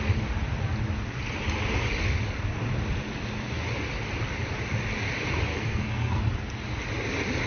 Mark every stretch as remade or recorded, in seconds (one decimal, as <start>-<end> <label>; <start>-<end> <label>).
0.0-5.5 recorded; 5.5-6.2 remade; 6.2-7.5 recorded